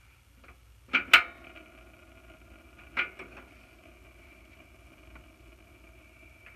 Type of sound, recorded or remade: recorded